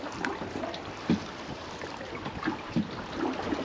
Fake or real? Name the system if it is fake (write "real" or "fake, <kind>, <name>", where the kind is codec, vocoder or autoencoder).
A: real